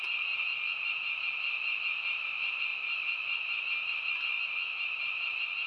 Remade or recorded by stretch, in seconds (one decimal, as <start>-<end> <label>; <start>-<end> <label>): 0.0-5.7 recorded